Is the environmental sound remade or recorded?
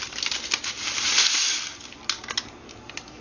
recorded